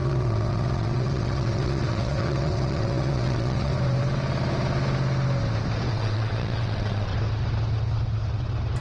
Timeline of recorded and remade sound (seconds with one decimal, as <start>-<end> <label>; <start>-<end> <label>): 0.0-3.7 remade; 3.7-5.9 recorded; 5.9-7.1 remade; 7.1-8.8 recorded